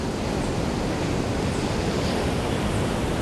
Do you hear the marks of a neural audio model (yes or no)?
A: no